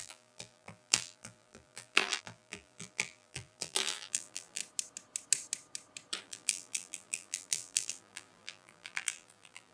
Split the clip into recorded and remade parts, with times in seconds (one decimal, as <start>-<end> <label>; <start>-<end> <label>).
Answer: 0.0-4.6 remade; 4.6-6.2 recorded; 6.2-9.7 remade